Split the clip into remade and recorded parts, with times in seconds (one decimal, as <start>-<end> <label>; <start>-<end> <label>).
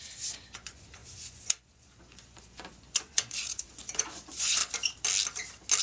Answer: 0.0-4.6 remade; 4.6-5.8 recorded